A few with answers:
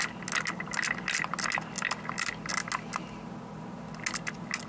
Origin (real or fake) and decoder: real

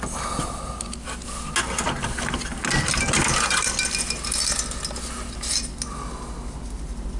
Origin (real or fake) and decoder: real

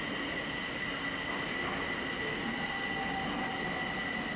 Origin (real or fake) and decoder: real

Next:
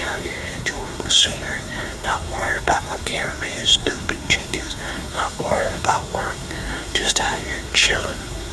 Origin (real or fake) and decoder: fake, codec, SNAC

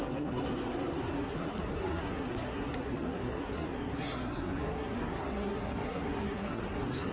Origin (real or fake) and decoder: fake, codec, SNAC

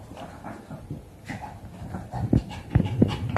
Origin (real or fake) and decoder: real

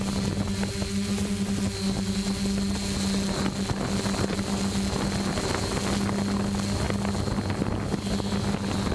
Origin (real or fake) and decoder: real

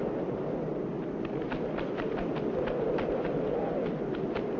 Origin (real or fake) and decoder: real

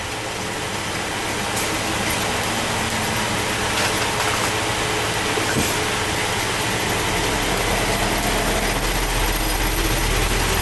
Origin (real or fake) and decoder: real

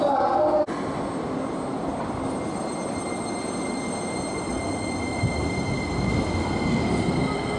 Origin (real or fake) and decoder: real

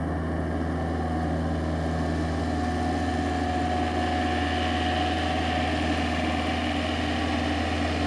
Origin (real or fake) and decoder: real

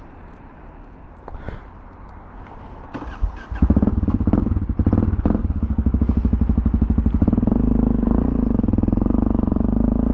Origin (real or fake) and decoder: real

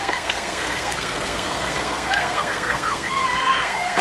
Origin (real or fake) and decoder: fake, codec, SNAC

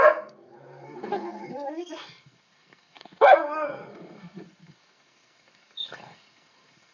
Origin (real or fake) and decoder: fake, codec, SNAC